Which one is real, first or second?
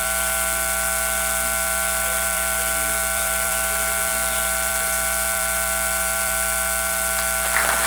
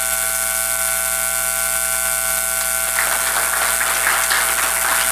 second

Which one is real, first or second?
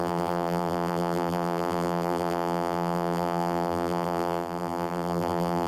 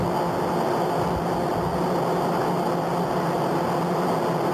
second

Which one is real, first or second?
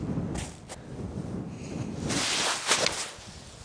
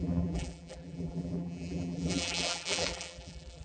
first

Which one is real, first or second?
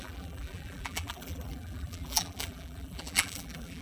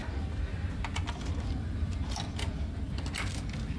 second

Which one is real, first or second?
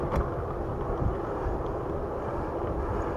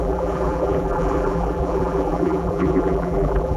first